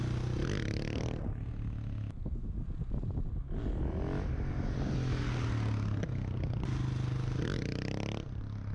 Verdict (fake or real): real